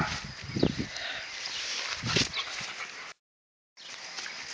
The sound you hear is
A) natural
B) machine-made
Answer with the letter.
A